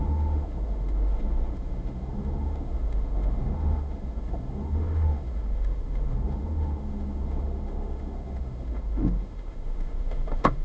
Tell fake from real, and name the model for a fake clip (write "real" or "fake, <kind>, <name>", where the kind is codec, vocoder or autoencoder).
fake, autoencoder, DAC-VAE